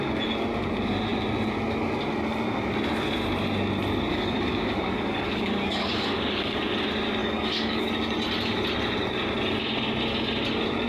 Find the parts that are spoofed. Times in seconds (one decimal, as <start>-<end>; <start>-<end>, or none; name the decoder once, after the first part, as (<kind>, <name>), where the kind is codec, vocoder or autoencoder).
4.1-6.6 (codec, DAC); 7.2-7.9